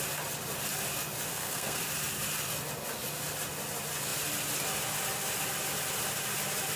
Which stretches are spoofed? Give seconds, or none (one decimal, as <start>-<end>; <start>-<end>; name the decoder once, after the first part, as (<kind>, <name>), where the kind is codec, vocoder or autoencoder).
1.3-1.8 (codec, SNAC)